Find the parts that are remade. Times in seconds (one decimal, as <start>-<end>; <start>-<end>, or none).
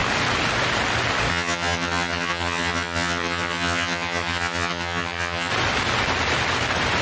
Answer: 1.3-5.5